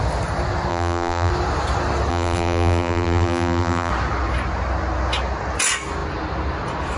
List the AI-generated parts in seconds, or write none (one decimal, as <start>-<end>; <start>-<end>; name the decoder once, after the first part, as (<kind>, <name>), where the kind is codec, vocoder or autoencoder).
0.7-1.3 (vocoder, BigVGAN v2); 2.1-3.9